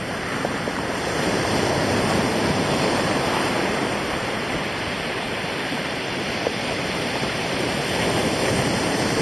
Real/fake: fake